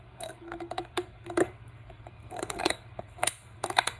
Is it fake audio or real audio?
fake